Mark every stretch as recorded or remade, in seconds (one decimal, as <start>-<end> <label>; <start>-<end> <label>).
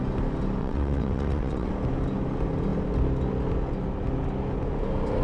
0.0-0.6 recorded; 0.6-1.7 remade; 1.7-5.2 recorded